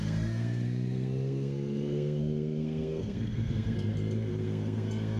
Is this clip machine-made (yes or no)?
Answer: yes